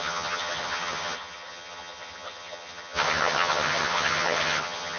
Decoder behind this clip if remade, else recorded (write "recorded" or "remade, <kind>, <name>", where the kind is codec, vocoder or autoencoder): remade, vocoder, HiFi-GAN